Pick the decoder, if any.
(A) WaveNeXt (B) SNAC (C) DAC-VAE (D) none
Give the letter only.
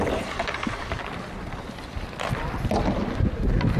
D